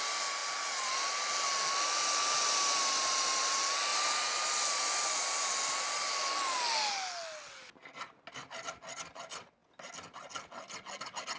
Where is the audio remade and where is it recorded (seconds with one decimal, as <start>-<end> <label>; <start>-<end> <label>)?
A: 0.0-11.4 recorded

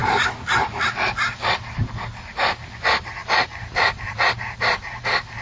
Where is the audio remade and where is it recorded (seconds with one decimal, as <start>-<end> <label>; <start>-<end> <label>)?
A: 0.0-5.4 recorded

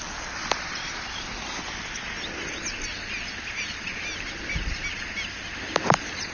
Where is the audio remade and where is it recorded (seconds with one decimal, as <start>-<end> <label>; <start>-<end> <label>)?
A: 0.0-6.3 recorded

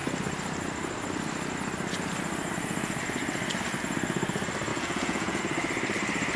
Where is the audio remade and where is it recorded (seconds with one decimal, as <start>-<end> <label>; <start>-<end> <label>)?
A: 0.0-4.7 recorded; 4.7-5.4 remade; 5.4-6.4 recorded